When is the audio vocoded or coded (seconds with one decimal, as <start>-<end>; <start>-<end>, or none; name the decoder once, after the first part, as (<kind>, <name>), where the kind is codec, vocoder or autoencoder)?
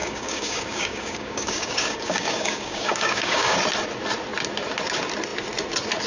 0.0-3.6 (codec, DAC)